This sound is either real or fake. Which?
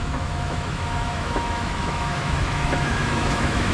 fake